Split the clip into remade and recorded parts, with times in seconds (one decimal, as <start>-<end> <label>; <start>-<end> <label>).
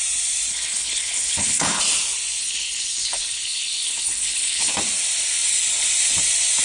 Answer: 0.0-0.5 recorded; 0.5-1.8 remade; 1.8-2.4 recorded; 2.4-4.7 remade; 4.7-6.6 recorded